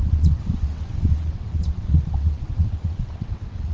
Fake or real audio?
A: fake